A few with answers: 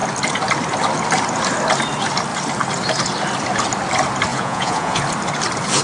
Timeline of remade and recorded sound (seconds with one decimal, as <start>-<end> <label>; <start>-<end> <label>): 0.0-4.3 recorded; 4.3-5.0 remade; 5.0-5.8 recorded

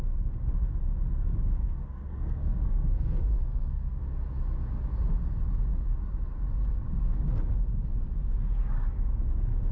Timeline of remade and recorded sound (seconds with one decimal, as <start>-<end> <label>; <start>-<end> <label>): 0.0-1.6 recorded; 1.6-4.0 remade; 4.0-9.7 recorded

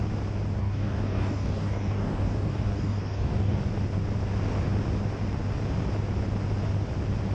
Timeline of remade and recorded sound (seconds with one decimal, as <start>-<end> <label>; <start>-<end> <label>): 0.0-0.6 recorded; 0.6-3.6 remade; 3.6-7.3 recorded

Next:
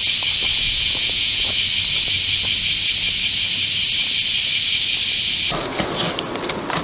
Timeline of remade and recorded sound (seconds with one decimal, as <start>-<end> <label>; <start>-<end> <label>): 0.0-0.5 recorded; 0.5-1.5 remade; 1.5-6.8 recorded

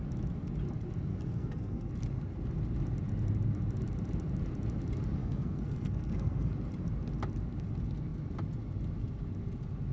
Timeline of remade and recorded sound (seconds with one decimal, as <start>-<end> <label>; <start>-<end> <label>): 0.0-1.1 recorded; 1.1-1.9 remade; 1.9-5.2 recorded; 5.2-6.5 remade; 6.5-9.9 recorded

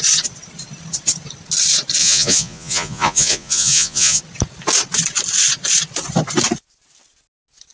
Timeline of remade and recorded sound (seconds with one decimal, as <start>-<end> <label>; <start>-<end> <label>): 0.0-2.0 recorded; 2.0-4.2 remade; 4.2-7.7 recorded